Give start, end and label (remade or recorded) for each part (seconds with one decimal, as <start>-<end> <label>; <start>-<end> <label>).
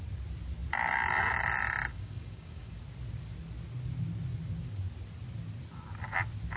0.0-1.9 recorded; 1.9-2.8 remade; 2.8-6.6 recorded